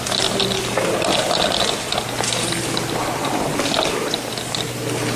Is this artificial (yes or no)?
no